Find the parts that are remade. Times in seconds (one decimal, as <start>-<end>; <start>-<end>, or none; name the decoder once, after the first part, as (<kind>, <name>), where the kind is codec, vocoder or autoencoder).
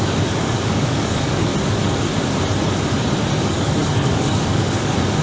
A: 0.0-1.5 (codec, DAC); 3.4-5.2